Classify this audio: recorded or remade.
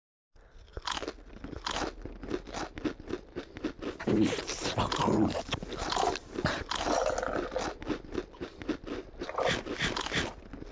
recorded